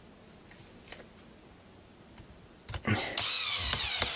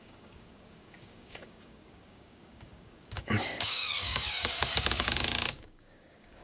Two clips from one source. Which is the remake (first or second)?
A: second